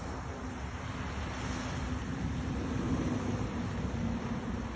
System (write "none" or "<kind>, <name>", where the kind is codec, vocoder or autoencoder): none